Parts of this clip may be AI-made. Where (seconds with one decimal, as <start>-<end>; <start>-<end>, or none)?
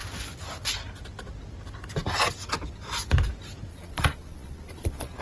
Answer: 3.7-5.2